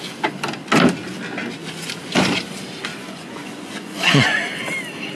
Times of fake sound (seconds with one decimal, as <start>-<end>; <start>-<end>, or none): 2.9-4.4